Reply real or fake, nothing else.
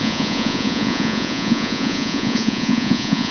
fake